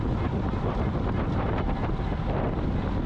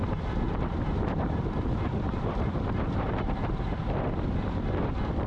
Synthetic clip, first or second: second